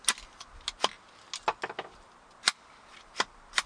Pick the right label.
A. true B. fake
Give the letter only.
A